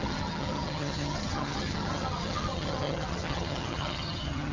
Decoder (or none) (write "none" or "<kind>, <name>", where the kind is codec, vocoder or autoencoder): vocoder, HiFi-GAN